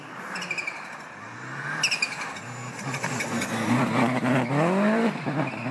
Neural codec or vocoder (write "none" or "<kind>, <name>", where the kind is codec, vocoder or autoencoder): none